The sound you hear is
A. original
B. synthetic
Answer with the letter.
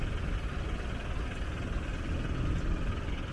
A